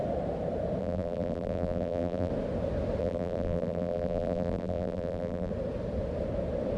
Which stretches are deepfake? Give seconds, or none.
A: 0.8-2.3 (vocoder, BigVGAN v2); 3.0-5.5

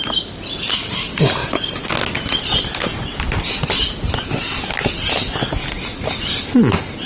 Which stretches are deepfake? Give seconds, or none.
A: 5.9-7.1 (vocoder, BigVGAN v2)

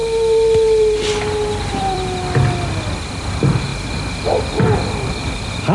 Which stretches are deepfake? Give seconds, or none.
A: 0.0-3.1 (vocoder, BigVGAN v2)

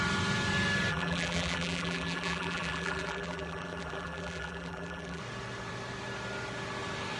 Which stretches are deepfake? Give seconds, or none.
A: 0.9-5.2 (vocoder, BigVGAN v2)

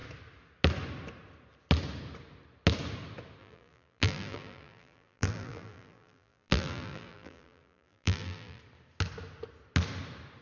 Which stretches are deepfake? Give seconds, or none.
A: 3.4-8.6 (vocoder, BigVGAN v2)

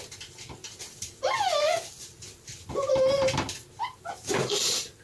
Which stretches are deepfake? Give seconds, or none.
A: 0.6-1.1 (vocoder, BigVGAN v2)

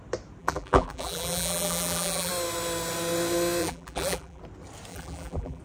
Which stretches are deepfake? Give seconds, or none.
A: 0.4-2.3 (vocoder, BigVGAN v2); 3.6-4.4; 4.9-5.6